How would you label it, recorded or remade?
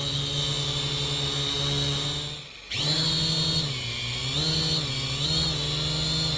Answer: recorded